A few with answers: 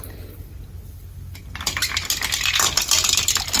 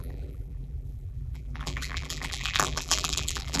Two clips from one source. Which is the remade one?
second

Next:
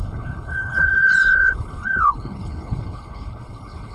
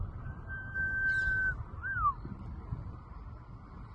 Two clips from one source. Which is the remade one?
first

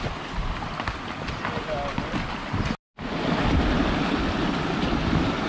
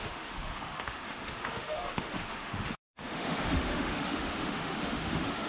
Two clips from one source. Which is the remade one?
second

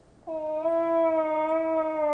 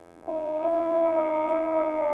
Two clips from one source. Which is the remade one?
second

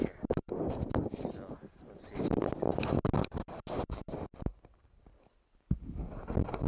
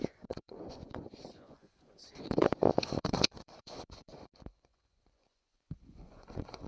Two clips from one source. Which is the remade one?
second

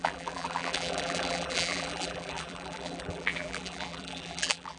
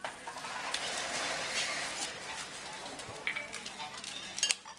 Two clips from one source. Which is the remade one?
first